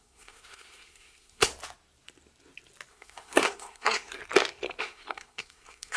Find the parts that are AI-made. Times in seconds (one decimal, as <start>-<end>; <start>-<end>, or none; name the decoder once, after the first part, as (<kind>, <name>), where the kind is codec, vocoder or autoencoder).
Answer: 0.0-1.5 (codec, SNAC); 2.9-4.2; 4.8-6.0